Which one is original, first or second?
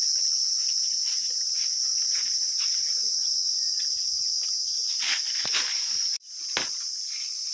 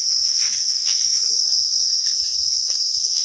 first